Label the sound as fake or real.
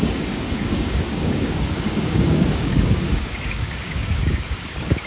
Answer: fake